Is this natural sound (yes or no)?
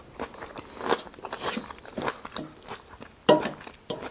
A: yes